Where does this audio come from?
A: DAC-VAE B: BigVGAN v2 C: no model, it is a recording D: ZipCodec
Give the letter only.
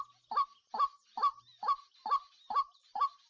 C